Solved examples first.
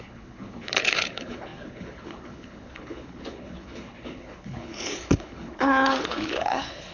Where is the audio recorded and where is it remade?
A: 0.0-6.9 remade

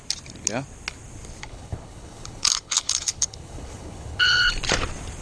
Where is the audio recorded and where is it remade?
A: 0.0-1.4 recorded; 1.4-4.5 remade; 4.5-5.2 recorded

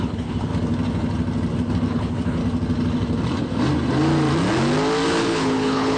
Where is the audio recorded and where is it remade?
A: 0.0-0.5 remade; 0.5-1.9 recorded; 1.9-2.4 remade; 2.4-5.2 recorded; 5.2-6.0 remade